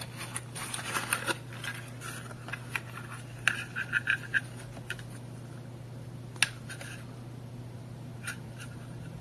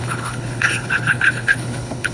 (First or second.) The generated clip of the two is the second